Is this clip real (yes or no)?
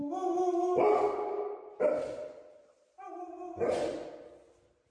yes